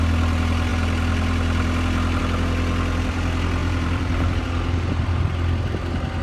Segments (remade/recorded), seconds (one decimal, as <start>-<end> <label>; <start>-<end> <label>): 0.0-3.6 recorded; 3.6-4.4 remade; 4.4-6.2 recorded

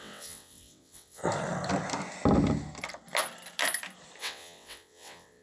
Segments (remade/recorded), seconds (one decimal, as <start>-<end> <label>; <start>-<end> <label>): 0.0-1.2 remade; 1.2-4.2 recorded; 4.2-5.4 remade

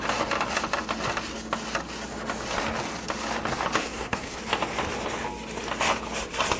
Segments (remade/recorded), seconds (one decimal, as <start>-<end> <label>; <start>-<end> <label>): 0.0-3.8 recorded; 3.8-4.4 remade; 4.4-6.6 recorded

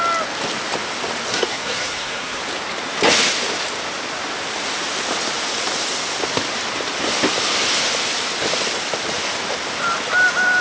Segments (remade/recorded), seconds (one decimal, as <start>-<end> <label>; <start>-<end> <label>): 0.0-1.3 recorded; 1.3-2.4 remade; 2.4-10.6 recorded

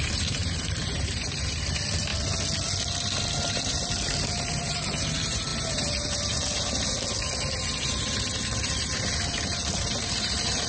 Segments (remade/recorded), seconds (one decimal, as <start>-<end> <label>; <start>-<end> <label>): 0.0-2.1 remade; 2.1-3.3 recorded; 3.3-10.7 remade

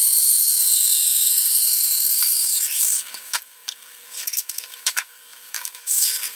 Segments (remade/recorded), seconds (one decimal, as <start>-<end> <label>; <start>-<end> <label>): 0.0-6.4 remade